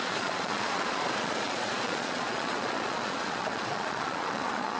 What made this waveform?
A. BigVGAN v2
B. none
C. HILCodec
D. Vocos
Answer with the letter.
D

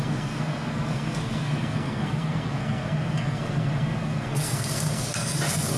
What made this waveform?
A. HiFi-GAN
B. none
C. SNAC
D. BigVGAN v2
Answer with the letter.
C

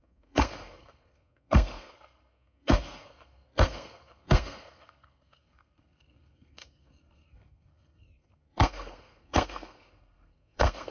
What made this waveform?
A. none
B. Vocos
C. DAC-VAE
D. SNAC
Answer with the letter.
D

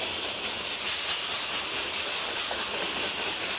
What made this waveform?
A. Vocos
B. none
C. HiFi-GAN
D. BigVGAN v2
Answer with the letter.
B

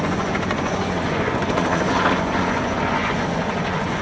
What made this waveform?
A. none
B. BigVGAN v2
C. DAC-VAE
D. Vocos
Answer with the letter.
D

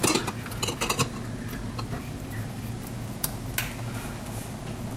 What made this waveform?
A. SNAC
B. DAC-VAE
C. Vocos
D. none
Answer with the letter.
D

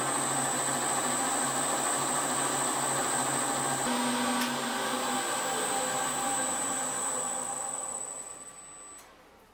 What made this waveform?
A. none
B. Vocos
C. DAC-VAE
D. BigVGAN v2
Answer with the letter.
A